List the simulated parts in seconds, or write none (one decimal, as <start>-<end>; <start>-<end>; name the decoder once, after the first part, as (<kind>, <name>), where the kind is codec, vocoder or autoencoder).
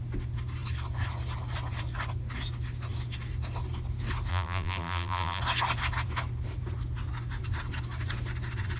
4.3-5.4 (vocoder, BigVGAN v2)